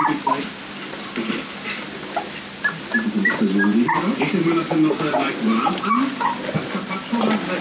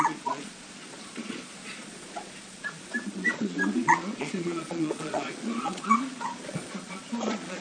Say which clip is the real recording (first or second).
first